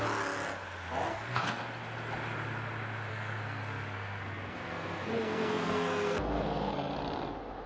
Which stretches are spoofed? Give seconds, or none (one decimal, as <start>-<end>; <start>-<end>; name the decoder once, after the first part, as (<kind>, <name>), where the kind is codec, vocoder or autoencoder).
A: 1.1-1.6 (codec, SNAC); 3.1-6.9